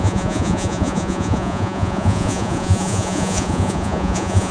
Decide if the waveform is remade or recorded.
remade